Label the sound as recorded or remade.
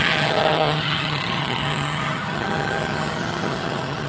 remade